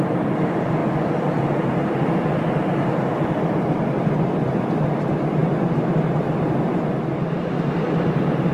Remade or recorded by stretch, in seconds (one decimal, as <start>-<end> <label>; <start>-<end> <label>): 0.0-8.5 recorded

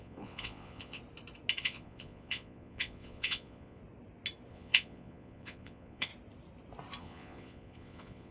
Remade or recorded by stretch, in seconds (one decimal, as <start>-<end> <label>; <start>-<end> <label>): 0.0-1.0 remade; 1.0-1.6 recorded; 1.6-3.8 remade; 3.8-4.5 recorded; 4.5-6.1 remade; 6.1-7.0 recorded; 7.0-8.3 remade